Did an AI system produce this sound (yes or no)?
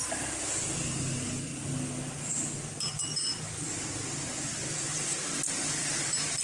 no